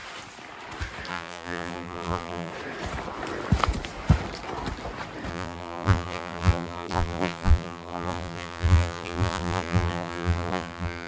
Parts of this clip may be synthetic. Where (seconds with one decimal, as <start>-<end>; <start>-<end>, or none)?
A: 1.1-2.5; 5.3-11.1

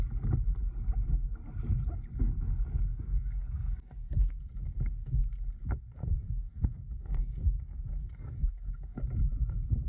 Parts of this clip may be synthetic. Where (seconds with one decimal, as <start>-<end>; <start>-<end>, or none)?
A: 2.9-4.4; 6.0-9.0

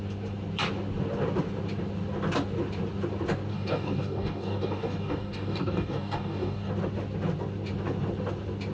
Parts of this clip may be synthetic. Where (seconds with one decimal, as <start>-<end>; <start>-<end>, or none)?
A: 3.5-6.7

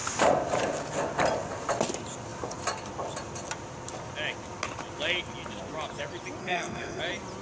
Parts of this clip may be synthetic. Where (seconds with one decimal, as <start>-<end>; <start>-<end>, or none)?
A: 6.4-7.0

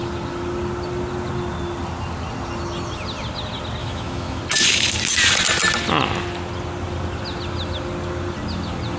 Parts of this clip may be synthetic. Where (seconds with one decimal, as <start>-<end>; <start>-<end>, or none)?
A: 3.8-4.4

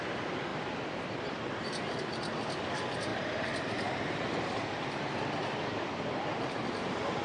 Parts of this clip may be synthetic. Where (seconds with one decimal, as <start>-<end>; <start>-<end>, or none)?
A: 0.5-2.0; 3.1-5.2